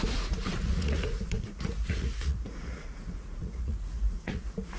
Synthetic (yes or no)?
yes